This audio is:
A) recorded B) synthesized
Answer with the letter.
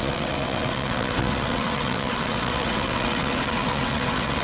B